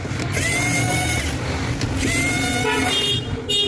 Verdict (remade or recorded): recorded